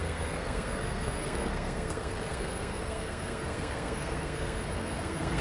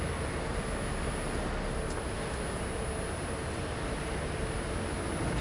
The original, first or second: second